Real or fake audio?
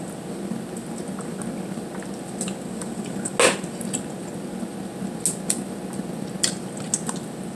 real